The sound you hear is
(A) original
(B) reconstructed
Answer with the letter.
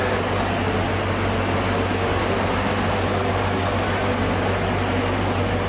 A